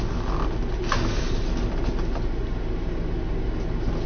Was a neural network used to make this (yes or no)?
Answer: no